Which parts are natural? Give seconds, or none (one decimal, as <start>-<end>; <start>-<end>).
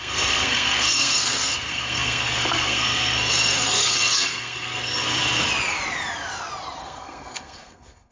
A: 5.0-6.8